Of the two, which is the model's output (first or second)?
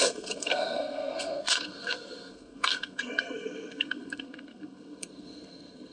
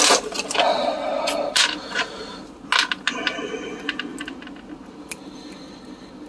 first